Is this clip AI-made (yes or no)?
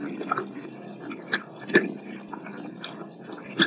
no